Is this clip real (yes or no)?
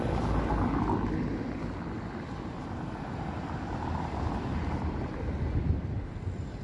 yes